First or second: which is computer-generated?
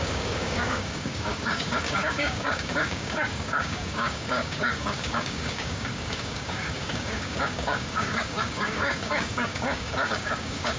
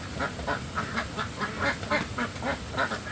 first